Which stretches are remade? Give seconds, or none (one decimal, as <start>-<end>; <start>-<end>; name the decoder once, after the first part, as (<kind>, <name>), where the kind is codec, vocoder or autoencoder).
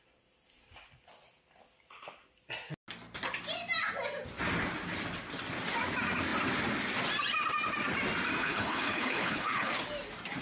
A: 8.4-9.7 (codec, HILCodec)